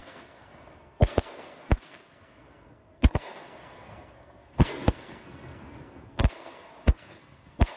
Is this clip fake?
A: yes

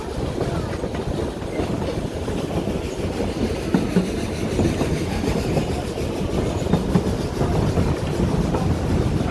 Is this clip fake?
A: no